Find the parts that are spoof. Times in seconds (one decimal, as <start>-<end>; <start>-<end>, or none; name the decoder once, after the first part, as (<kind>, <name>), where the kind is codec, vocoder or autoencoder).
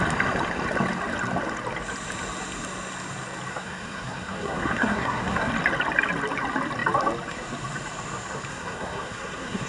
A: 3.5-5.5 (codec, SNAC); 8.5-9.7